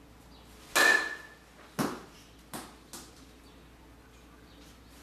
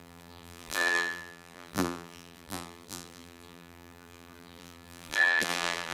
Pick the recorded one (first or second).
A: first